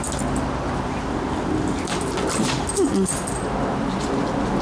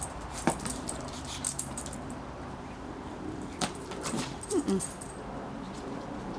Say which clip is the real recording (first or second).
first